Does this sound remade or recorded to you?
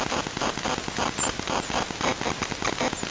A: recorded